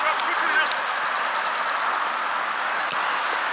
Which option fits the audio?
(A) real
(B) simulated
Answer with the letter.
A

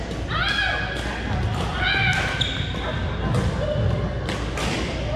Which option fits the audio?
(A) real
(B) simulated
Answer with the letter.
A